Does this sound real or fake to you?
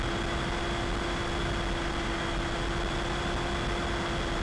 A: real